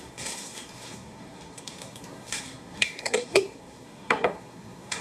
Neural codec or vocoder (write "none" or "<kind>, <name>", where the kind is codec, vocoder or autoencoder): codec, SNAC